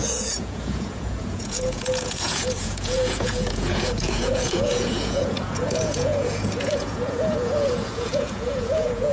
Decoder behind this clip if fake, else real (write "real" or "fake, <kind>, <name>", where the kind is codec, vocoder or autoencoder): fake, vocoder, Vocos